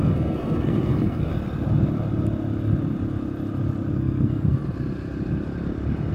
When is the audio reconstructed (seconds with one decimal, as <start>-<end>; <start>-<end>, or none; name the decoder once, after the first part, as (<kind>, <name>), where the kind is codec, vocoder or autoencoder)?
0.0-1.3 (codec, SNAC); 3.9-4.6